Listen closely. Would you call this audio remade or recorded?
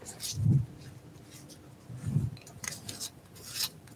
recorded